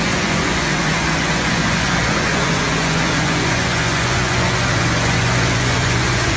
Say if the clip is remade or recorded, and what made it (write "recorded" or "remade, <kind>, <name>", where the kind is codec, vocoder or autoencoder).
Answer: remade, vocoder, Vocos